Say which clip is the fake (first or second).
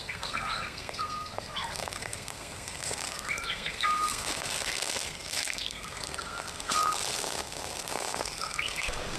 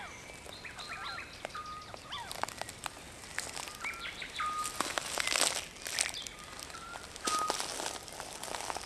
first